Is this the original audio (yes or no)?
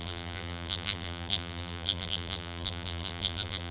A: no